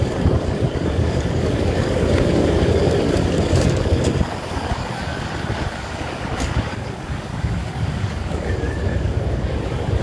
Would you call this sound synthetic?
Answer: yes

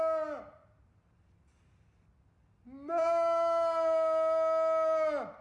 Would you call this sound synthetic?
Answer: no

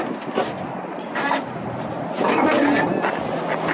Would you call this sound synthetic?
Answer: no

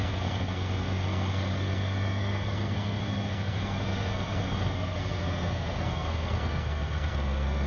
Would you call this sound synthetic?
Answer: yes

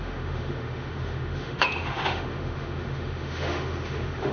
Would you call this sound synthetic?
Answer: yes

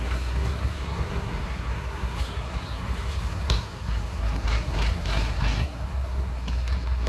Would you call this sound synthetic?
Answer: yes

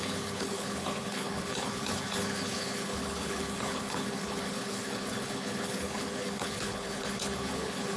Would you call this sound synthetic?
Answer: yes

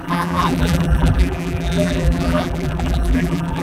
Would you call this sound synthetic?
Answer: yes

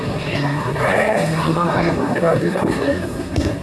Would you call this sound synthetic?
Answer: yes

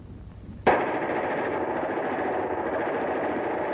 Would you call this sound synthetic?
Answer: no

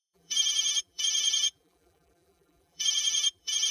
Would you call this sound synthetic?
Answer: yes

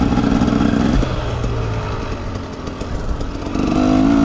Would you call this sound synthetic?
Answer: no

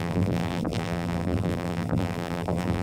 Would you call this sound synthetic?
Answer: yes